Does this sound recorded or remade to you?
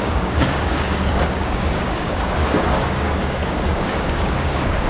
remade